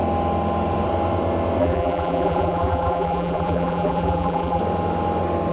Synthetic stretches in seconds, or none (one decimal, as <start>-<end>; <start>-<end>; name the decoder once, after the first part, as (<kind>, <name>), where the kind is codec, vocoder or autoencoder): 1.6-4.6 (vocoder, BigVGAN v2)